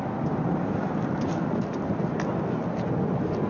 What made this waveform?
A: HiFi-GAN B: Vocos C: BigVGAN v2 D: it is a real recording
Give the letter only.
D